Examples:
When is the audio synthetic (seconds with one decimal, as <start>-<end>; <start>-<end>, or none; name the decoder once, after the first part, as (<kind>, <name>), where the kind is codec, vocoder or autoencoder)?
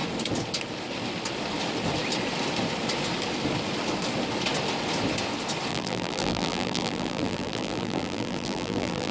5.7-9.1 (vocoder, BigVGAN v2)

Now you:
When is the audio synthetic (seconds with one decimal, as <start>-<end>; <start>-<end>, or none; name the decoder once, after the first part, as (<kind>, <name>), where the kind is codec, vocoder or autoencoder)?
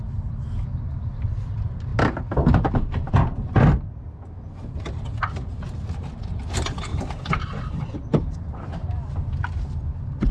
1.9-3.1 (vocoder, BigVGAN v2); 6.9-9.8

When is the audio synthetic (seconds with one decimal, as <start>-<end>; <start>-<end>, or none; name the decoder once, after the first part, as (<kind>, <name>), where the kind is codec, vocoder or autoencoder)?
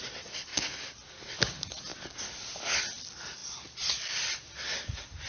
0.0-0.5 (vocoder, BigVGAN v2); 1.5-1.9; 2.8-5.3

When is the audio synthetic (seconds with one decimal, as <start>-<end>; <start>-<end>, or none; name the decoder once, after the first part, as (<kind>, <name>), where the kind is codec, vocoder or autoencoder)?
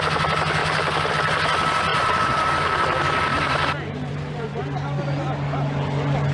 1.9-2.5 (vocoder, BigVGAN v2); 3.3-4.6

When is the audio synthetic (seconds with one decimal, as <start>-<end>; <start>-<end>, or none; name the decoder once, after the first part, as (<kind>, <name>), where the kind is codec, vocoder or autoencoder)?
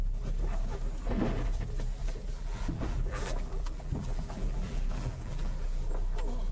2.0-5.9 (vocoder, BigVGAN v2)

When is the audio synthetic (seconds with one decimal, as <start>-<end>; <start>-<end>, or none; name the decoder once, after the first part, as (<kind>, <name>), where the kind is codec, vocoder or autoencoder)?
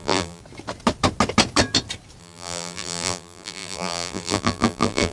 0.0-0.4 (vocoder, BigVGAN v2); 2.2-5.1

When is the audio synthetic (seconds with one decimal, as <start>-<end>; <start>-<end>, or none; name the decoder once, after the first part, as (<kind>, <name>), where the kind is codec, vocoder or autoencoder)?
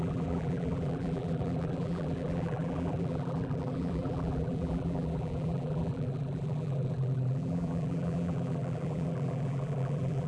0.0-10.3 (vocoder, BigVGAN v2)